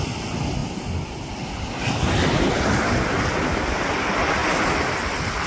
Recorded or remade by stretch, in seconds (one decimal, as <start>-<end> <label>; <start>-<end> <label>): 0.0-5.5 recorded